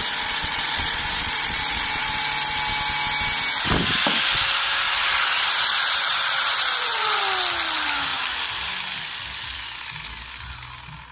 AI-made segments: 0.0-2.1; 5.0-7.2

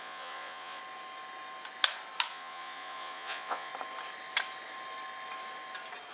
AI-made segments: 0.0-0.8; 2.3-3.7

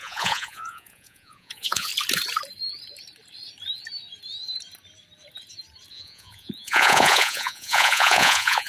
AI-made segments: 0.0-1.9; 5.9-8.7